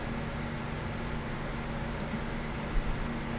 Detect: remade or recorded recorded